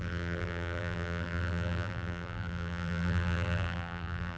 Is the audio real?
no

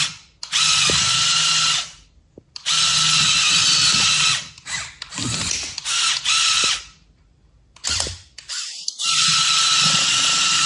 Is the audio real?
yes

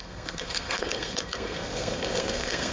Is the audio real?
no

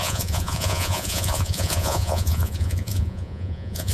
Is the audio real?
no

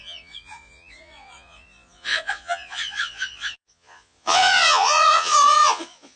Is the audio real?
no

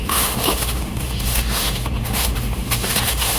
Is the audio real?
no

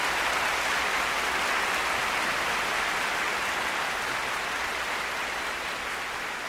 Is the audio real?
yes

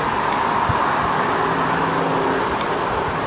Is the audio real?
yes